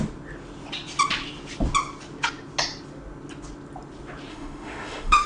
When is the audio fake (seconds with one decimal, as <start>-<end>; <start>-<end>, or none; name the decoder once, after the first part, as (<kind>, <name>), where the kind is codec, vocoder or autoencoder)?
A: 4.3-5.3 (autoencoder, DAC-VAE)